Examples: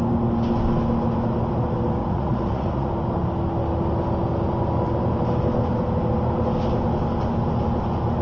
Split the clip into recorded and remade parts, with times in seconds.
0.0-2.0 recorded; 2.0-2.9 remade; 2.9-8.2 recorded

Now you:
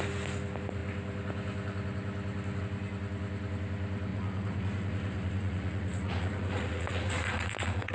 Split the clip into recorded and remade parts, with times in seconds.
0.0-4.1 recorded; 4.1-7.9 remade

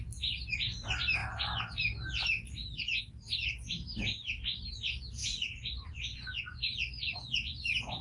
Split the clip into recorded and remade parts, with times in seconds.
0.0-5.2 recorded; 5.2-8.0 remade

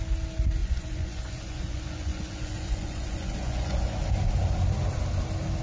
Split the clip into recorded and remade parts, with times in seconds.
0.0-0.6 recorded; 0.6-4.0 remade; 4.0-5.6 recorded

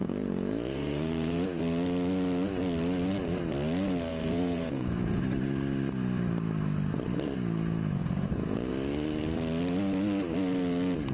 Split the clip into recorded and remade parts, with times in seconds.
0.0-1.6 remade; 1.6-4.1 recorded; 4.1-5.2 remade; 5.2-8.0 recorded; 8.0-8.7 remade; 8.7-11.1 recorded

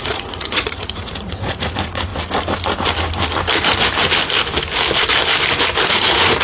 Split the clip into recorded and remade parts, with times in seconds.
0.0-2.1 remade; 2.1-5.9 recorded; 5.9-6.4 remade

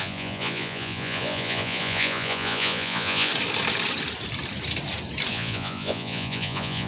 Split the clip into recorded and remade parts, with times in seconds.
0.0-3.3 remade; 3.3-5.3 recorded; 5.3-6.9 remade

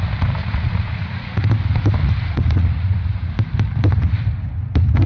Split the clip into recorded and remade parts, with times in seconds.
0.0-0.4 recorded; 0.4-1.5 remade; 1.5-2.0 recorded; 2.0-3.3 remade; 3.3-5.1 recorded